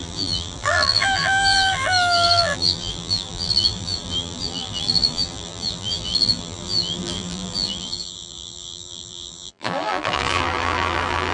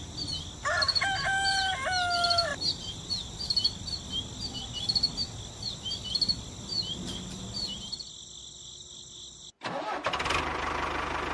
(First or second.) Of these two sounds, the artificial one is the first